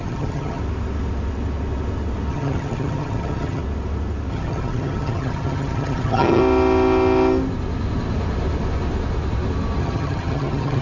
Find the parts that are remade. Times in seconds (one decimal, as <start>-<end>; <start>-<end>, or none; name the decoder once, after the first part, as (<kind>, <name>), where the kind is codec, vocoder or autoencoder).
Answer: 0.0-0.6 (vocoder, HiFi-GAN); 2.3-3.6; 4.3-6.4; 9.8-10.8